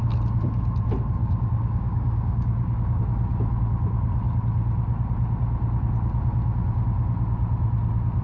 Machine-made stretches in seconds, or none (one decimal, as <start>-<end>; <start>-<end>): 1.2-3.0